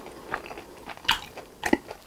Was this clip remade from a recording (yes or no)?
no